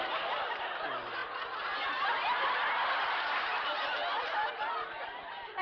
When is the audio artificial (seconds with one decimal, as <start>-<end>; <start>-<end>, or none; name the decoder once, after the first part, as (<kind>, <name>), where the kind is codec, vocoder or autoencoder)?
none